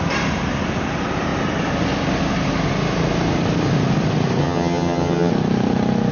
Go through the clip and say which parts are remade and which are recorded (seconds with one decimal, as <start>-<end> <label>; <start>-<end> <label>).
0.0-4.4 recorded; 4.4-5.3 remade; 5.3-6.1 recorded